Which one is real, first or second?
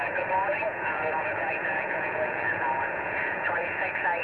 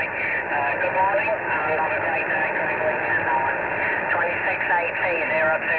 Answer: second